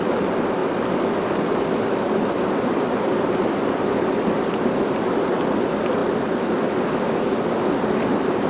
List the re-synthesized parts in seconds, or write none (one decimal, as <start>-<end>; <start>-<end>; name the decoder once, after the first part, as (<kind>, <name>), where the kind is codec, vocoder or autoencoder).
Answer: none